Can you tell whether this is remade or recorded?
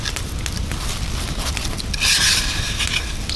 recorded